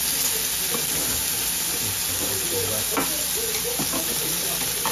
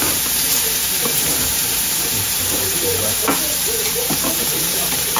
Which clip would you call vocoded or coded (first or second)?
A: second